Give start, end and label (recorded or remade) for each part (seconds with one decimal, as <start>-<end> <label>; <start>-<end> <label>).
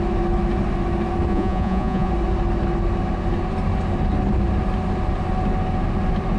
0.0-1.3 recorded; 1.3-2.1 remade; 2.1-6.4 recorded